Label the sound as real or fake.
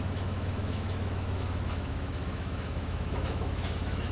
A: fake